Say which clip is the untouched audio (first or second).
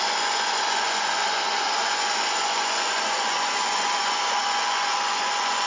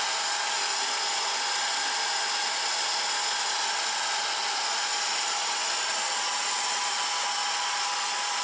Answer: second